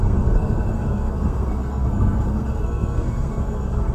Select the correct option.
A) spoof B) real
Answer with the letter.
A